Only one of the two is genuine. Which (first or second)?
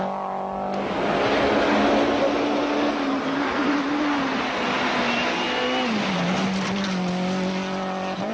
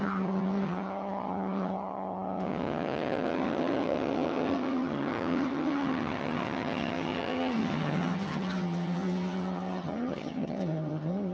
first